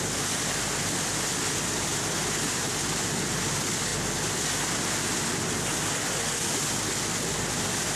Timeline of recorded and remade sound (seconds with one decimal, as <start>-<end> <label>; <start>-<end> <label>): 0.0-8.0 recorded